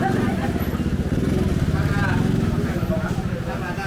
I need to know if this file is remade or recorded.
recorded